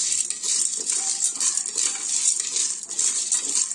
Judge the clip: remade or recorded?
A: remade